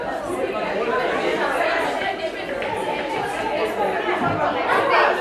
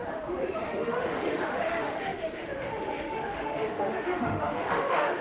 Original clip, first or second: first